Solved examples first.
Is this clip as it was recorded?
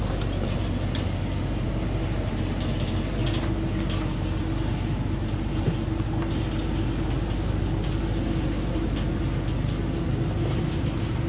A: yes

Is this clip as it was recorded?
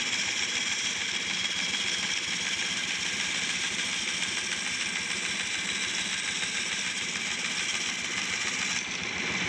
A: yes